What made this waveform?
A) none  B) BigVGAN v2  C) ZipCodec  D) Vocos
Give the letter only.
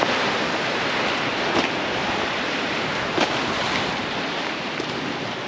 B